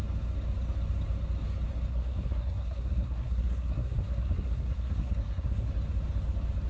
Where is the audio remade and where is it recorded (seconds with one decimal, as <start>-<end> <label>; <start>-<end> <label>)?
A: 0.0-1.9 recorded; 1.9-5.7 remade; 5.7-6.7 recorded